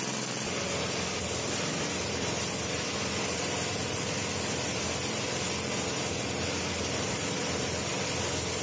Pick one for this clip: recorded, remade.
recorded